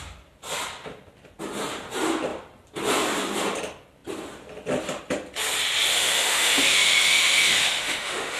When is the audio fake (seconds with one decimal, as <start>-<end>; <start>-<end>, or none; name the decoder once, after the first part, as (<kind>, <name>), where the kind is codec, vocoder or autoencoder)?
5.9-8.4 (autoencoder, DAC-VAE)